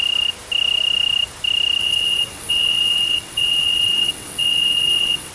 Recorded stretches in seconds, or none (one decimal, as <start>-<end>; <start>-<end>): 0.0-1.8